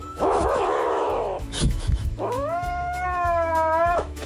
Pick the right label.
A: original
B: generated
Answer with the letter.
B